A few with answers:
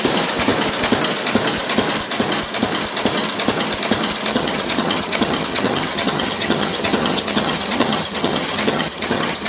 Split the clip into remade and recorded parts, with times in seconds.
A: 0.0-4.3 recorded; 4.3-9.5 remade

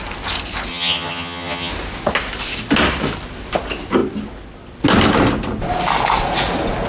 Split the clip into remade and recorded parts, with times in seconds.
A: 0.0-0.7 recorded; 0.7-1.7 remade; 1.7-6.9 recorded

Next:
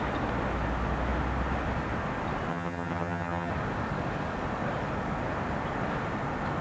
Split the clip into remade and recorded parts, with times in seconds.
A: 0.0-2.5 recorded; 2.5-3.5 remade; 3.5-6.6 recorded

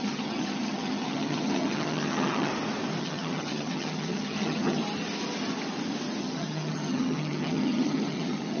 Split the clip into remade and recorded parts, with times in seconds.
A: 0.0-2.5 remade; 2.5-3.0 recorded; 3.0-4.8 remade; 4.8-6.2 recorded; 6.2-8.6 remade

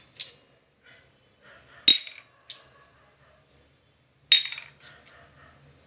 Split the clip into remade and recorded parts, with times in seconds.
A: 0.0-5.9 recorded

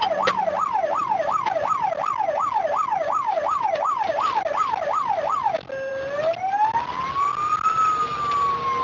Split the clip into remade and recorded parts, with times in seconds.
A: 0.0-8.8 recorded

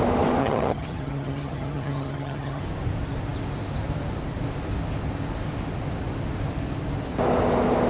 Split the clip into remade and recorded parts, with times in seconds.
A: 0.0-0.4 recorded; 0.4-2.6 remade; 2.6-7.9 recorded

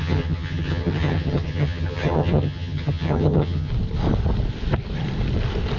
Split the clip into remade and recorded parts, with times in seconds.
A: 0.0-3.7 remade; 3.7-5.8 recorded